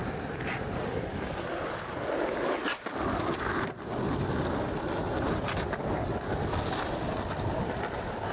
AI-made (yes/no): no